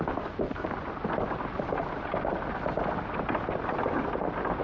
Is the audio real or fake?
real